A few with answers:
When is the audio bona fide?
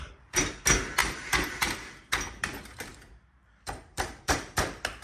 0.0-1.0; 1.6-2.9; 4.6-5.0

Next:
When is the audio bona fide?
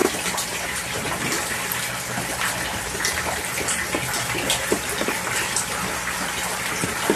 1.1-7.2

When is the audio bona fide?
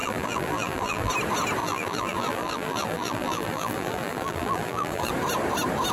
1.1-1.6; 5.1-5.9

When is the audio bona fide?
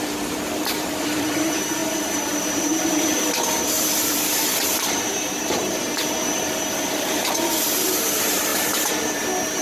none